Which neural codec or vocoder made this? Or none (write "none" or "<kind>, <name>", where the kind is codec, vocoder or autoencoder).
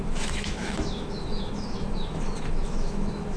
autoencoder, DAC-VAE